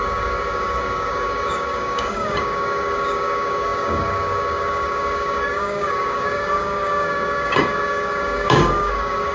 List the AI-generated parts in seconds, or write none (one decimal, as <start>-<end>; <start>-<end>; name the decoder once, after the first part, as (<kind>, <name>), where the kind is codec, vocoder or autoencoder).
0.0-9.3 (codec, DAC)